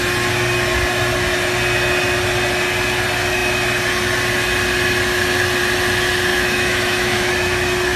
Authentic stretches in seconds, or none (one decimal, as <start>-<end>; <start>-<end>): 0.0-6.3; 7.3-8.0